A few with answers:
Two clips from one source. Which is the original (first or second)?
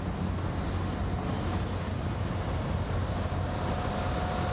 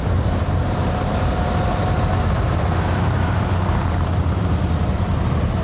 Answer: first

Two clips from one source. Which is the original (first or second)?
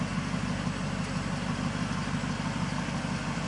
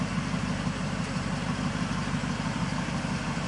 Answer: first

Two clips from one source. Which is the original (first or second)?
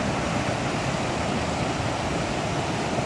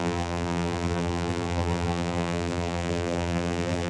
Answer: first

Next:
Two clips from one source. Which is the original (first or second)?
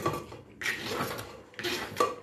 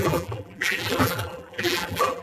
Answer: first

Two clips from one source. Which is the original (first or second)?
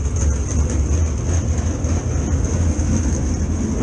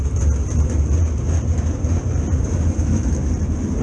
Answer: first